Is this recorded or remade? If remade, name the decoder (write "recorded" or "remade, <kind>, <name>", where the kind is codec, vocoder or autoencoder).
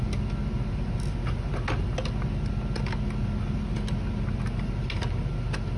recorded